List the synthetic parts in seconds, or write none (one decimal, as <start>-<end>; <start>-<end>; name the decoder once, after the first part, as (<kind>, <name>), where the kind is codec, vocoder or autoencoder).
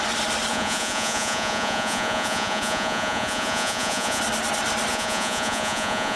0.5-4.2 (vocoder, Vocos); 4.9-6.2